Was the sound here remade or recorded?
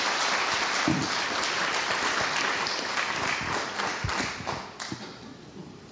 recorded